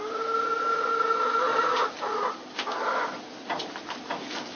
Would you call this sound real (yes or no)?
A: yes